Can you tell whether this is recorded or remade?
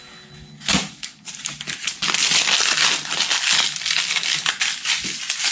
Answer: recorded